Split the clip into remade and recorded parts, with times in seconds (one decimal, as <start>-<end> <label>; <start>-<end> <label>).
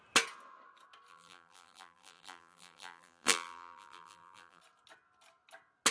0.0-1.1 recorded; 1.1-4.6 remade; 4.6-5.9 recorded